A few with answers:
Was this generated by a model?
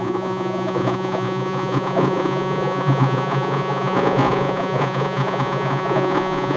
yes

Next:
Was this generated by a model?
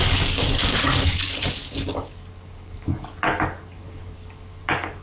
yes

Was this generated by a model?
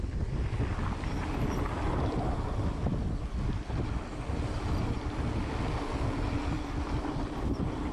no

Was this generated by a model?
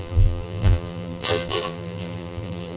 yes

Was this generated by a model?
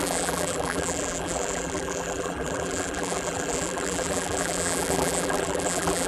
yes